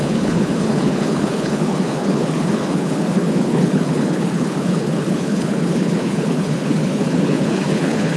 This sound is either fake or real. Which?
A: fake